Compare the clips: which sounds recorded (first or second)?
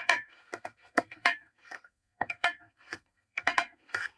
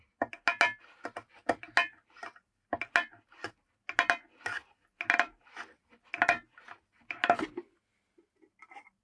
second